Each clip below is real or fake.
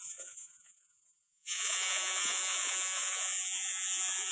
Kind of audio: fake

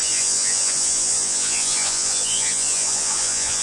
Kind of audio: fake